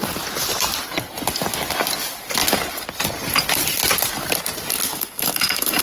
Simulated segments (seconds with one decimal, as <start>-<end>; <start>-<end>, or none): 4.9-5.8

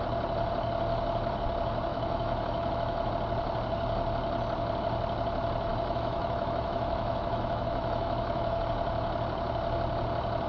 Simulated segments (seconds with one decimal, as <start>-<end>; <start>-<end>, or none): 1.9-3.1; 5.7-8.6

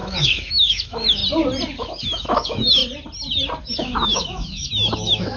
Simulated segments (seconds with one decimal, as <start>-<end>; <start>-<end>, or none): 0.0-1.2; 1.7-2.8; 3.6-5.4